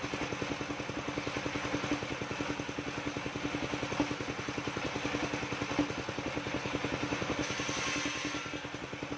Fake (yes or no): no